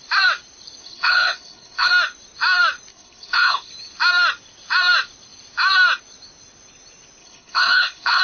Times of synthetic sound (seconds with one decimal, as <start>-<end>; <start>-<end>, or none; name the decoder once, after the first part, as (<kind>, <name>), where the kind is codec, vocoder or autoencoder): 0.8-1.9 (codec, HILCodec); 2.9-3.7; 7.2-8.2